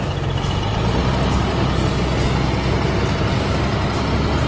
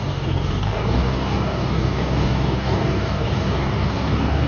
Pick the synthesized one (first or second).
second